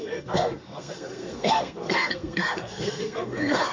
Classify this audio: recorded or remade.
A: remade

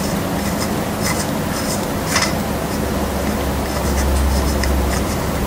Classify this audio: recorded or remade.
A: recorded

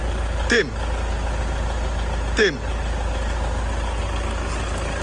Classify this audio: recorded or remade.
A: recorded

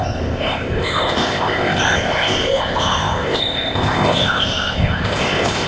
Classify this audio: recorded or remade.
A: remade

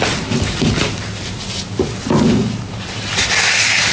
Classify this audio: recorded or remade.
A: recorded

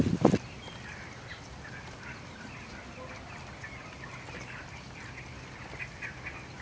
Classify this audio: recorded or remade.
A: recorded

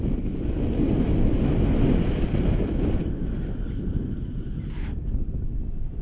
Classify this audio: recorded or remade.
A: recorded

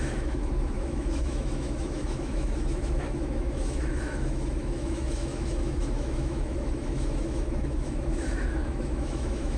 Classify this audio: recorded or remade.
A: remade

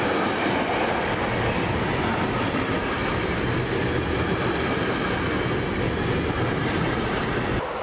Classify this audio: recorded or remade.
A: recorded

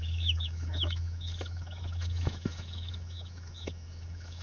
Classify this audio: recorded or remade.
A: remade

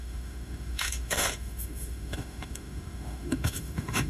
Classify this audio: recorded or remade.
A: remade